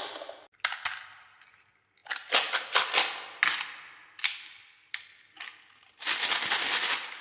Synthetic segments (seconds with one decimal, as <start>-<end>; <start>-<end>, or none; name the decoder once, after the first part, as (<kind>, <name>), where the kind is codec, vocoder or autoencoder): none